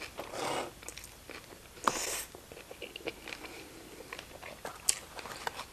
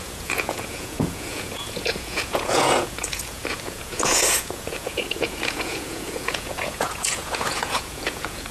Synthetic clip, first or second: second